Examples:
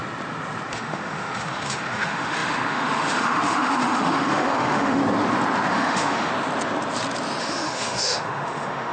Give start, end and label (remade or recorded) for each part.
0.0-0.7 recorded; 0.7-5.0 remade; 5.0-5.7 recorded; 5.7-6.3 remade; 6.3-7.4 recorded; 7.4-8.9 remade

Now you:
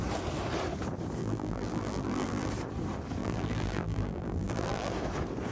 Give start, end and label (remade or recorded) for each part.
0.0-1.2 recorded; 1.2-2.5 remade; 2.5-3.2 recorded; 3.2-4.9 remade; 4.9-5.5 recorded

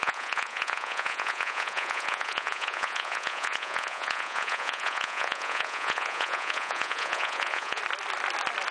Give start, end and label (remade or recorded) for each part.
0.0-7.8 remade; 7.8-8.7 recorded